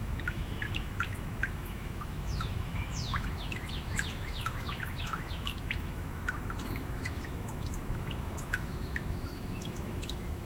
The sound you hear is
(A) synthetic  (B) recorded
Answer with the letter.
A